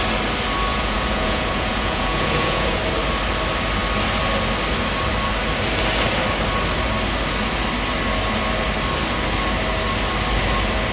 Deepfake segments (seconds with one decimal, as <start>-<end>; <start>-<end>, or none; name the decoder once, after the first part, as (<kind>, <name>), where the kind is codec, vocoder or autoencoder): 0.7-2.8 (vocoder, Vocos)